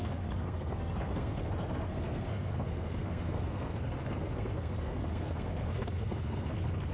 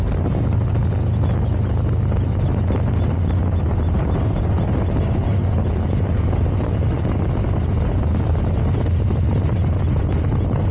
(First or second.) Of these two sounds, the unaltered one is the second